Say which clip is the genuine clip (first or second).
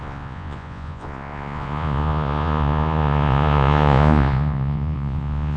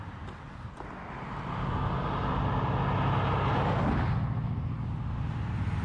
second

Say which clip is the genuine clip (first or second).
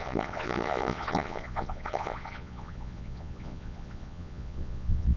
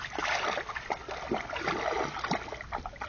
second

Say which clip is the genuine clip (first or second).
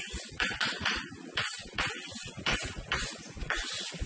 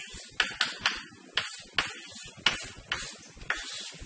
second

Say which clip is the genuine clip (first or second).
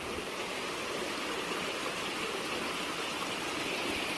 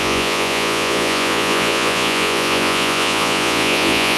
first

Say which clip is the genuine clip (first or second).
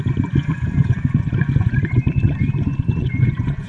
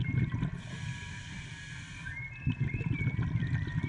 second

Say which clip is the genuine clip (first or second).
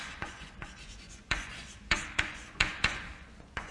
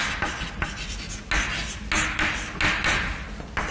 second